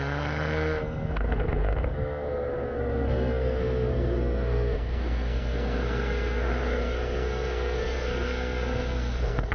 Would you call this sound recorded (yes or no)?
no